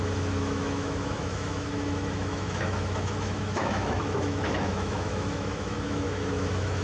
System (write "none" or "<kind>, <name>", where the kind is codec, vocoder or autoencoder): autoencoder, DAC-VAE